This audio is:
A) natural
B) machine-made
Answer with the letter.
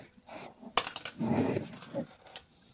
A